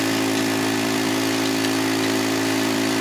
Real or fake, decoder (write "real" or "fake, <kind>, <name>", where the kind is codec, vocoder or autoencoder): real